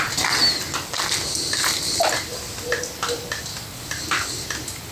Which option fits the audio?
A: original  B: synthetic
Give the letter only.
A